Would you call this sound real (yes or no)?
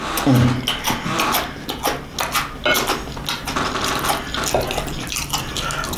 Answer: yes